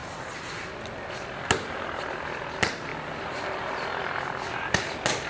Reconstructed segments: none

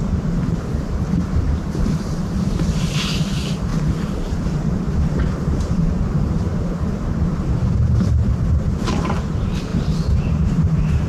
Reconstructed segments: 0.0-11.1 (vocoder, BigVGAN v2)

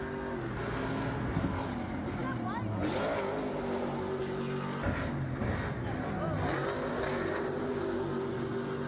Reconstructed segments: none

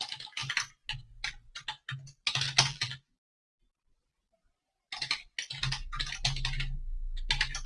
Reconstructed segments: 2.7-4.0 (vocoder, BigVGAN v2)